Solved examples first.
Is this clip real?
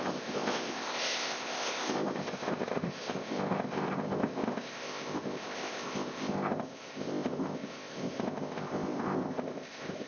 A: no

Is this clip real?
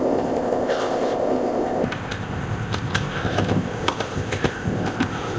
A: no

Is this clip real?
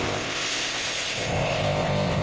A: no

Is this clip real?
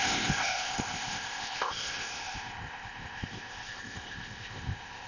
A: no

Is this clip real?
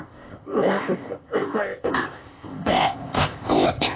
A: no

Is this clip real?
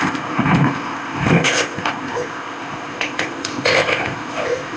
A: no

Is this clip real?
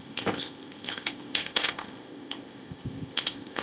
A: no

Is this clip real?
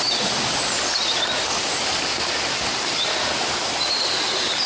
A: yes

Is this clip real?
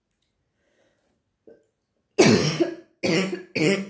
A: yes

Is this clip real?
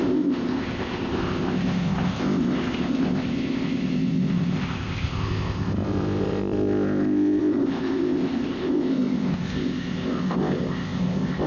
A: no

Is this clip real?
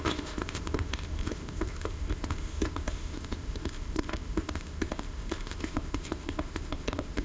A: no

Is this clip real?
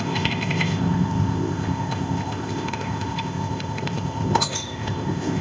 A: no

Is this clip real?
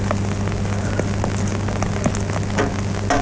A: yes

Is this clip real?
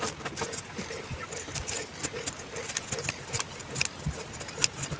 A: yes